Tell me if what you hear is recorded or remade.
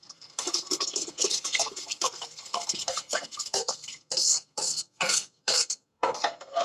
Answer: remade